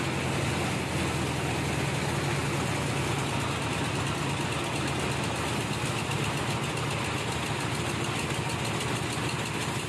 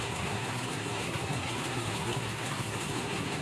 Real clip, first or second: first